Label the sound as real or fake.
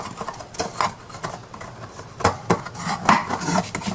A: real